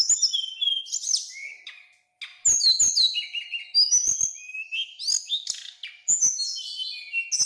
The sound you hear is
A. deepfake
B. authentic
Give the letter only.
B